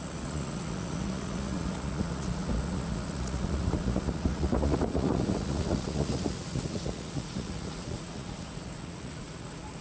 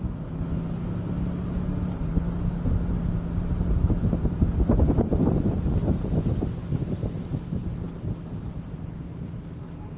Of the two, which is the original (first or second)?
second